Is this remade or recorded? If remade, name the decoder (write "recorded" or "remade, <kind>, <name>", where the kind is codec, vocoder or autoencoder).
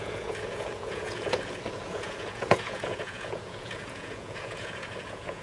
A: remade, vocoder, Vocos